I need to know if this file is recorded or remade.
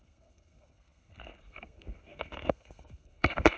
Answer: remade